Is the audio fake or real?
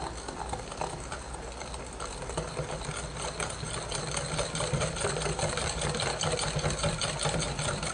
real